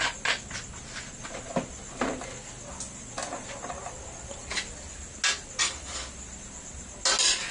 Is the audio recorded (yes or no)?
yes